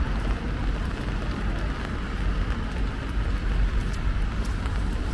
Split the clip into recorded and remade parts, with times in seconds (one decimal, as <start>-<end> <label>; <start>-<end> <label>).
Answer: 0.0-5.1 recorded